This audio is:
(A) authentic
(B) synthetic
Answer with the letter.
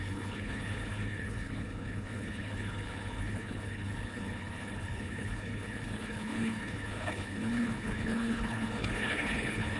B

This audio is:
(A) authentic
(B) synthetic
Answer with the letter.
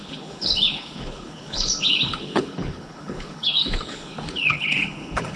B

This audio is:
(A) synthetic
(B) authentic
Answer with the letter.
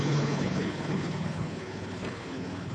A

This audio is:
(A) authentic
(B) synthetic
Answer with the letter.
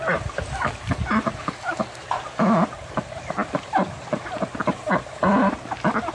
A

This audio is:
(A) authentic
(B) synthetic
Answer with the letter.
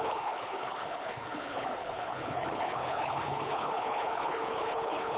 B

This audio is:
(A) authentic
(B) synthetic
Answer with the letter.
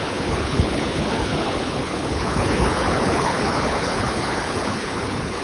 B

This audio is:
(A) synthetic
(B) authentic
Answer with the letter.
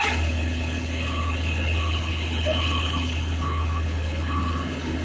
A